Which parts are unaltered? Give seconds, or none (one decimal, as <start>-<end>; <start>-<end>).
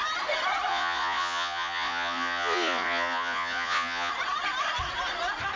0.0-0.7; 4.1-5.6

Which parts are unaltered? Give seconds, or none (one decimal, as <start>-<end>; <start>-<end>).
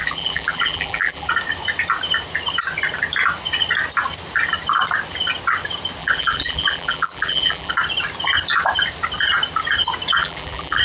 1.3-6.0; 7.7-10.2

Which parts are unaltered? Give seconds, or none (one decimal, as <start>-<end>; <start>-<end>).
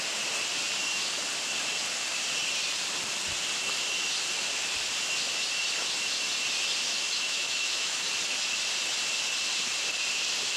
0.0-6.9; 8.1-10.6